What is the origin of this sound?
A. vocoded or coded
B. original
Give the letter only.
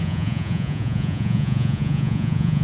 A